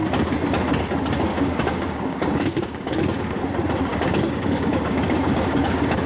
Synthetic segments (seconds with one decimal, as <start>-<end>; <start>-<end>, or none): 1.3-3.4; 3.9-6.1